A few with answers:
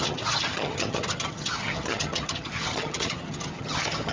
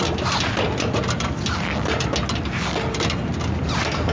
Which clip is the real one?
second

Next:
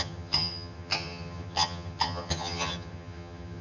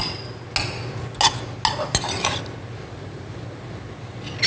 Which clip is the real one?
second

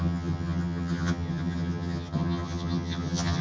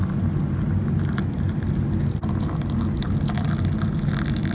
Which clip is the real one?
second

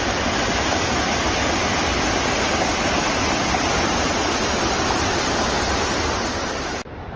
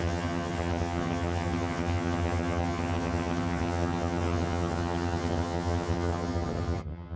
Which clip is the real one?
first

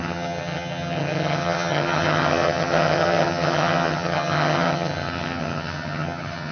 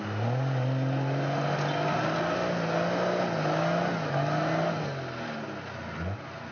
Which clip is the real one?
second